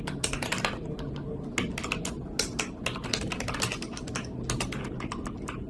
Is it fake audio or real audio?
real